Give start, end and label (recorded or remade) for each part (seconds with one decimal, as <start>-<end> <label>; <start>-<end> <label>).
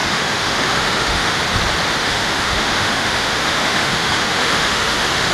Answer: 0.0-1.4 remade; 1.4-2.0 recorded; 2.0-5.3 remade